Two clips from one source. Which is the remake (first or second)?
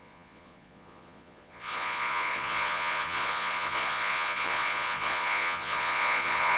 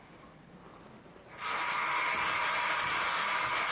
first